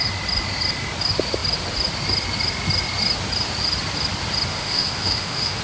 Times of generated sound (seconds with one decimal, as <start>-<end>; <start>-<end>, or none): 4.5-5.6